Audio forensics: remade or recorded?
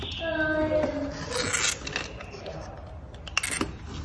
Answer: recorded